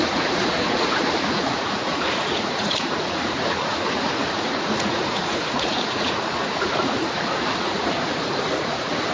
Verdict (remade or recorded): remade